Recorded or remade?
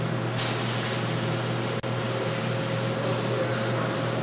recorded